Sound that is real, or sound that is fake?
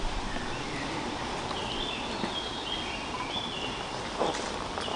real